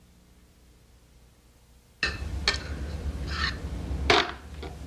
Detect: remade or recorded recorded